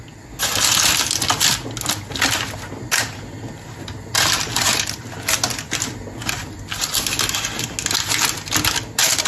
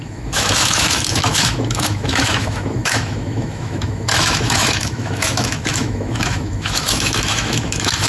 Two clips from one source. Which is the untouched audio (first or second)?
first